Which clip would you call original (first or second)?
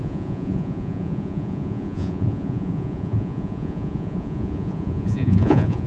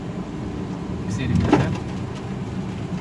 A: second